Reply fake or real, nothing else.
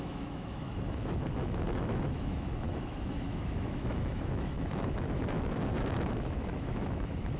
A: fake